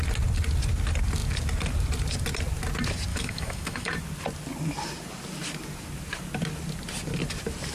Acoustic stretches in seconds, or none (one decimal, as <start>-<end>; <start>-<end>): 0.0-3.1; 4.0-7.7